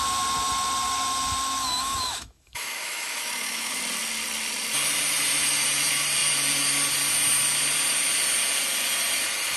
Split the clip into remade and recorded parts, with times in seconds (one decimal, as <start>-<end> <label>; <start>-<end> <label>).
0.0-1.6 recorded; 1.6-3.8 remade; 3.8-9.6 recorded